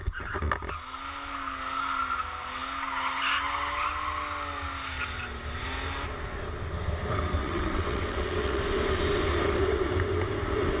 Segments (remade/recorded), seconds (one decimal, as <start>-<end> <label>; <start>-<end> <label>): 0.0-7.4 recorded; 7.4-8.6 remade; 8.6-10.8 recorded